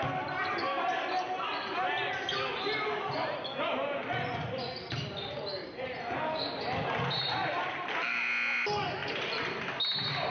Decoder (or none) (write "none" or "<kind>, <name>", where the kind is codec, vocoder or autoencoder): none